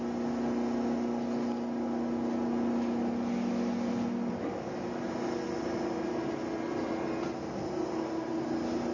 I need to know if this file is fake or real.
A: real